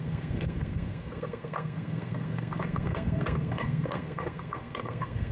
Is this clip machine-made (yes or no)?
yes